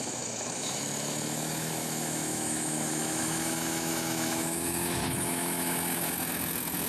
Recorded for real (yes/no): no